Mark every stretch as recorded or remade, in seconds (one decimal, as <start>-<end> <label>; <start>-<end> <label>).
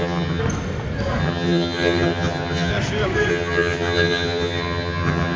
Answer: 0.0-0.4 remade; 0.4-1.2 recorded; 1.2-2.7 remade; 2.7-3.3 recorded; 3.3-5.4 remade